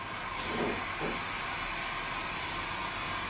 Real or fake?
real